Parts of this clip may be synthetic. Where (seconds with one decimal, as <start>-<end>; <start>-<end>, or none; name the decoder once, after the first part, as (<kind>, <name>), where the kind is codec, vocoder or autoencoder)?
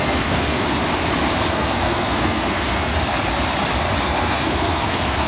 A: 0.0-0.8 (codec, SNAC); 1.5-2.9; 4.0-5.3